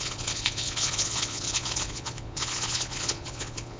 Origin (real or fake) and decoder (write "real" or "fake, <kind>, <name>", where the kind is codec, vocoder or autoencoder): fake, vocoder, Vocos